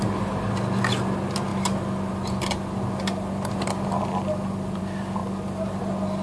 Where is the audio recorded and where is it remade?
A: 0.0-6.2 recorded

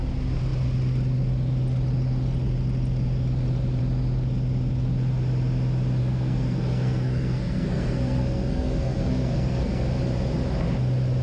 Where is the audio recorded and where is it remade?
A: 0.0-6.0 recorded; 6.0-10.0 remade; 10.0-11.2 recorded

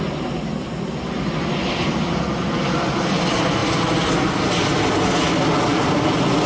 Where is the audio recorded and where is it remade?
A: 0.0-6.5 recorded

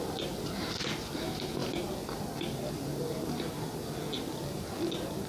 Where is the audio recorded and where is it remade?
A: 0.0-5.3 recorded

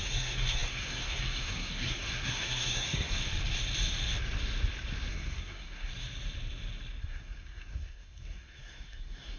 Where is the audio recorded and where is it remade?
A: 0.0-3.2 remade; 3.2-5.1 recorded; 5.1-5.9 remade; 5.9-7.0 recorded; 7.0-9.4 remade